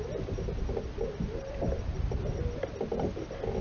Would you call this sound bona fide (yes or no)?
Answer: yes